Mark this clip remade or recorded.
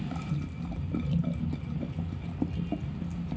recorded